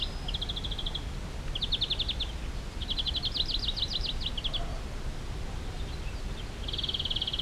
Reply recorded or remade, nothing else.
recorded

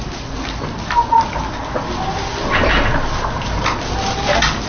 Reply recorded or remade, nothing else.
recorded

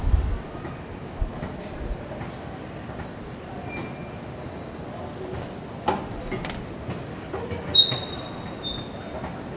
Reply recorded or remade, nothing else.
recorded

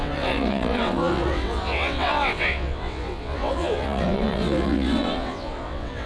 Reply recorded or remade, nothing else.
remade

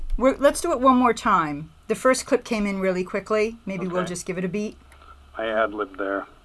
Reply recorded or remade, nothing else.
recorded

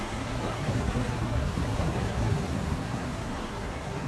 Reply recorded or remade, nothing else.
remade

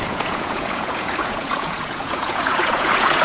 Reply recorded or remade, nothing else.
remade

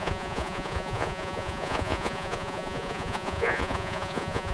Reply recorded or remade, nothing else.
remade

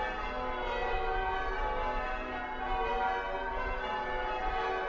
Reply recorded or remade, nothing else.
recorded